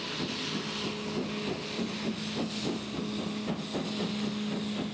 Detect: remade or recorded recorded